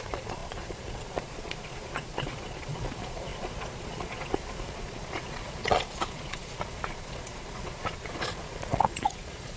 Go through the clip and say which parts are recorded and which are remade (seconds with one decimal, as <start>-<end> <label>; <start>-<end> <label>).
0.0-9.6 remade